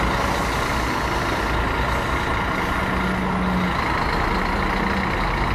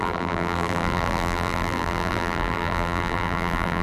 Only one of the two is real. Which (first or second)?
first